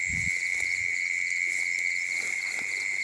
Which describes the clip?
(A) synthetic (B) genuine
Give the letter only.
B